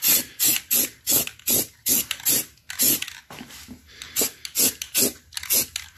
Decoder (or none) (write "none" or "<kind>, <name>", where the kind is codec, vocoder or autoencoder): none